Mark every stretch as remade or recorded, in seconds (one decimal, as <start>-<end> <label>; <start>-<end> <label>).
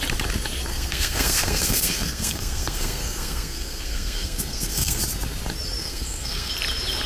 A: 0.0-0.7 recorded; 0.7-5.0 remade; 5.0-5.8 recorded; 5.8-6.5 remade; 6.5-7.1 recorded